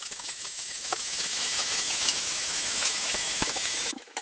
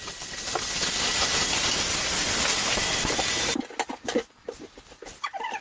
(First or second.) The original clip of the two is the second